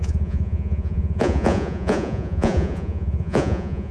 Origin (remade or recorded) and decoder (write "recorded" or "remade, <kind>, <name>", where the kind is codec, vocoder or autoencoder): remade, vocoder, Vocos